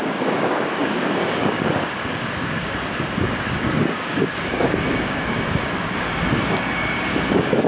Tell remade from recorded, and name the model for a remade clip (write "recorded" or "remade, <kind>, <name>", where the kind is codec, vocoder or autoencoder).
remade, codec, DAC